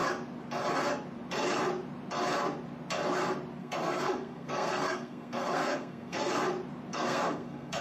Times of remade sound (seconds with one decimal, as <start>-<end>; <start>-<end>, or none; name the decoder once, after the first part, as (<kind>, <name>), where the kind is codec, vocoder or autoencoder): 3.6-6.3 (codec, SNAC); 6.9-7.8